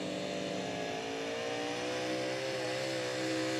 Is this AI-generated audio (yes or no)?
no